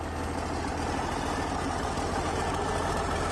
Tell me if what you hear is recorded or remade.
recorded